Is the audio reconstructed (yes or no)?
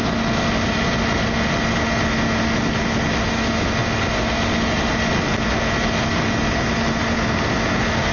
no